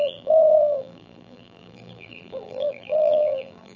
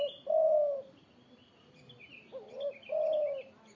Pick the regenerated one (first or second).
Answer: first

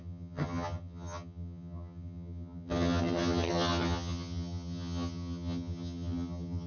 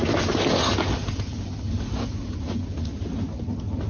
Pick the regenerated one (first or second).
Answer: first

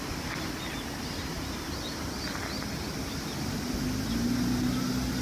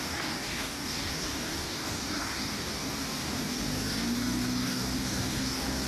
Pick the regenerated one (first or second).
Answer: second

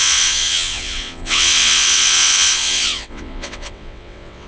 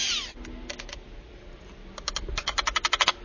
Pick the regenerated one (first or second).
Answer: first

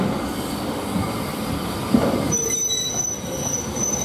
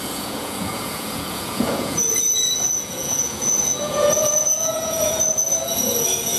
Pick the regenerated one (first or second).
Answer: second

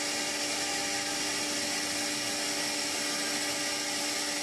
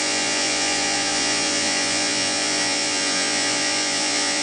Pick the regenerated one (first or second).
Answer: second